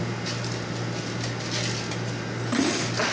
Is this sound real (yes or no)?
yes